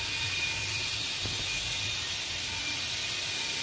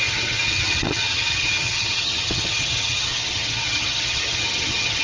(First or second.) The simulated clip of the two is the second